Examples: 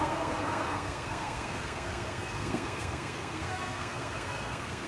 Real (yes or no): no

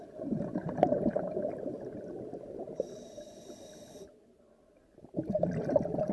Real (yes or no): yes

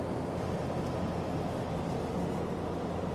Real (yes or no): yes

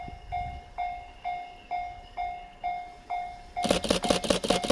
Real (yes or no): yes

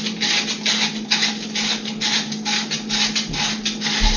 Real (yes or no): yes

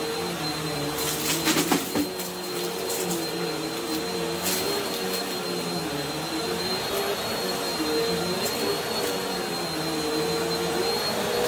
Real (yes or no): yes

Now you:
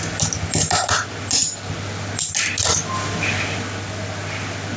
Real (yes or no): yes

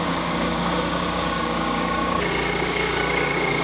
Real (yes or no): no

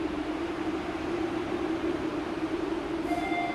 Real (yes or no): no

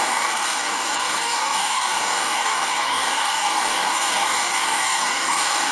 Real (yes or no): no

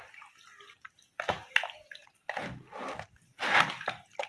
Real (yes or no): yes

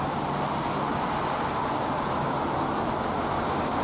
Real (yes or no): yes